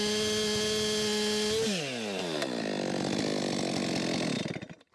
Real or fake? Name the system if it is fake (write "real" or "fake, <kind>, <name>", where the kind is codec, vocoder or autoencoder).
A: real